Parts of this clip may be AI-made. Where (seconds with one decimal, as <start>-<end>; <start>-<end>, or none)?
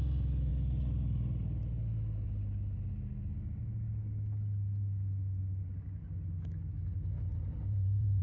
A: 7.3-8.2